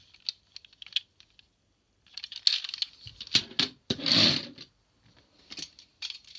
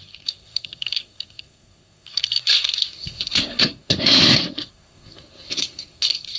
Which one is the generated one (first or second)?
second